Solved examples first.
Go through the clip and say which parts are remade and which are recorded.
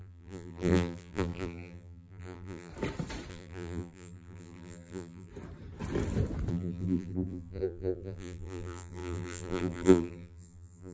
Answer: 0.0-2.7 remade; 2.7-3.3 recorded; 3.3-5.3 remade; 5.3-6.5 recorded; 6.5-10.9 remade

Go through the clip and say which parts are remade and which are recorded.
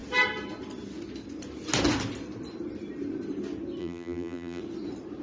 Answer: 0.0-3.8 recorded; 3.8-4.6 remade; 4.6-5.2 recorded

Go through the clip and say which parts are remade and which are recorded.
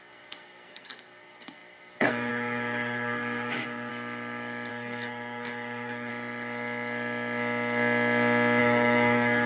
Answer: 0.0-3.9 remade; 3.9-4.7 recorded; 4.7-6.1 remade; 6.1-8.6 recorded; 8.6-9.5 remade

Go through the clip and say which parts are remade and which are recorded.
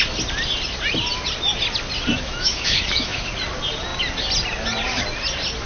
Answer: 0.0-2.1 recorded; 2.1-3.3 remade; 3.3-5.7 recorded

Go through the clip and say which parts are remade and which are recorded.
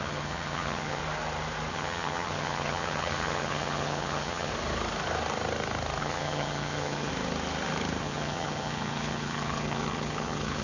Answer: 0.0-1.0 remade; 1.0-1.7 recorded; 1.7-4.5 remade; 4.5-6.0 recorded; 6.0-7.1 remade; 7.1-8.0 recorded; 8.0-10.6 remade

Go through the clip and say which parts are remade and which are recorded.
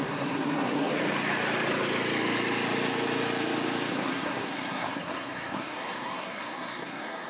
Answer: 0.0-0.9 remade; 0.9-3.9 recorded; 3.9-7.3 remade